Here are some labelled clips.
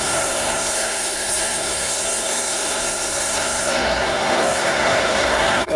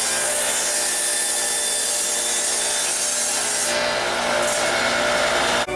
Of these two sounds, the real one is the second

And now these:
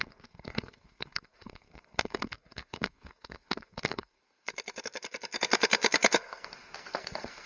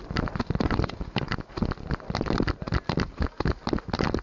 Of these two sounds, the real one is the second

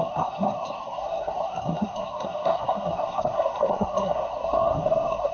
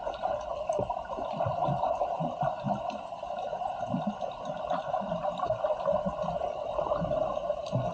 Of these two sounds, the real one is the second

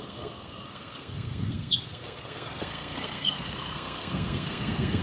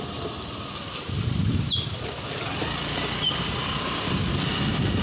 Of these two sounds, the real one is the second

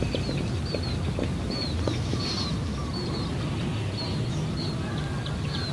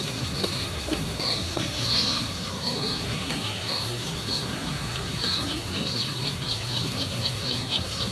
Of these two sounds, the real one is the first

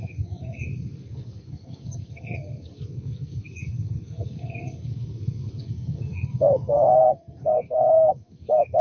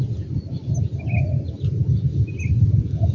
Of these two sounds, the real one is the second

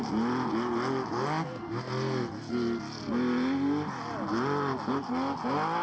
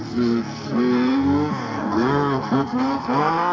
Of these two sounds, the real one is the first